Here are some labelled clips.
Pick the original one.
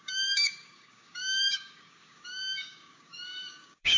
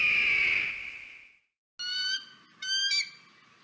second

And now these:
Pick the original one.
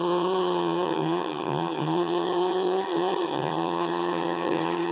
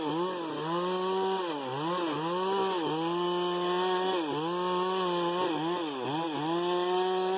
second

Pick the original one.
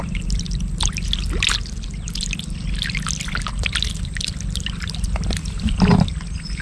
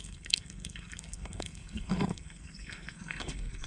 first